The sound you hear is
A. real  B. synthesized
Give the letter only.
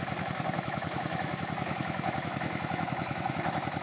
B